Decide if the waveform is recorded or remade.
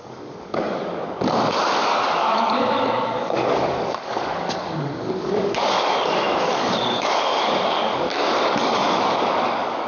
remade